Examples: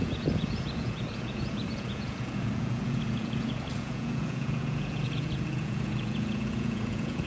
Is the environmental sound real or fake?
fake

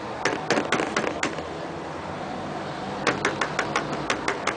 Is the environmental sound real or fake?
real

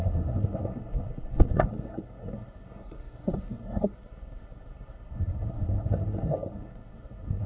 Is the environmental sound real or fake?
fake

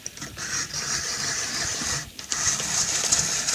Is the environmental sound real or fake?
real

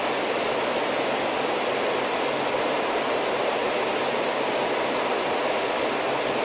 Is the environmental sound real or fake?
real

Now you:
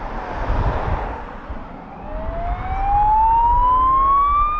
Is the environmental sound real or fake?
real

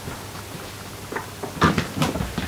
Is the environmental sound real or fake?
real